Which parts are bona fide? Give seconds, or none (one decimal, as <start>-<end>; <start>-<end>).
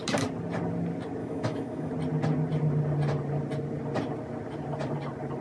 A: 0.0-1.2; 1.9-5.4